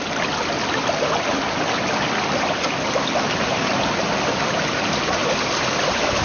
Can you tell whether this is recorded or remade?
recorded